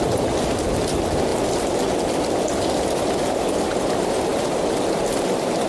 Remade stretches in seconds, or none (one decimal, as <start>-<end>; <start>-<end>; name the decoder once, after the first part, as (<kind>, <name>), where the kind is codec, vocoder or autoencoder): none